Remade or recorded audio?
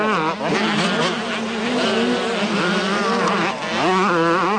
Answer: recorded